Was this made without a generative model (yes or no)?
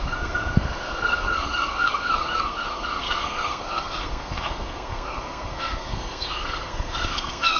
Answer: no